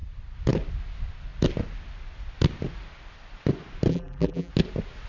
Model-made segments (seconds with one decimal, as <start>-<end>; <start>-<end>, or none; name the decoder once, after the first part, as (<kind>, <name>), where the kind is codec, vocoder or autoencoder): 3.9-4.5 (vocoder, BigVGAN v2)